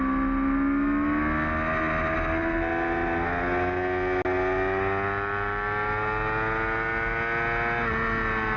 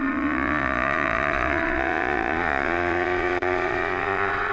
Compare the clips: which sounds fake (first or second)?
second